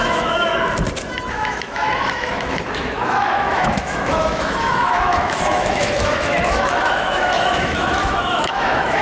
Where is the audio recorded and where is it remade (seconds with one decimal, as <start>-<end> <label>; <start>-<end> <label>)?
0.0-0.5 remade; 0.5-1.3 recorded; 1.3-9.0 remade